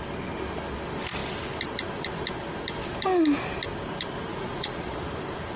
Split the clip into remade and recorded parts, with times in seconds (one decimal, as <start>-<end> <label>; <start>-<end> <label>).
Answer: 0.0-4.3 recorded; 4.3-5.0 remade; 5.0-5.6 recorded